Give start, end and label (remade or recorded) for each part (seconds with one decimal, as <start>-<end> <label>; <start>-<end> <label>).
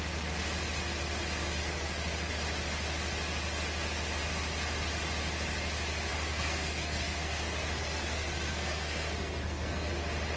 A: 0.0-1.6 recorded; 1.6-2.3 remade; 2.3-6.1 recorded; 6.1-9.9 remade; 9.9-10.4 recorded